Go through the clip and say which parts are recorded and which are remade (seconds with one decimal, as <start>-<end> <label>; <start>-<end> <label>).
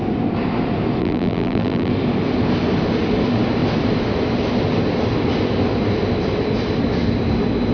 0.0-1.0 recorded; 1.0-1.9 remade; 1.9-7.7 recorded